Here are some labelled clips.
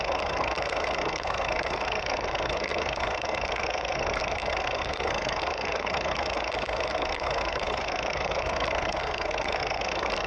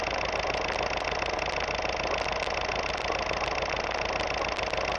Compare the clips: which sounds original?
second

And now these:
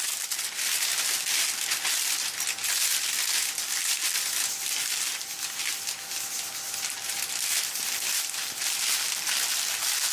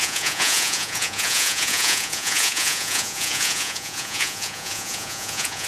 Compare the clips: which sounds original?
first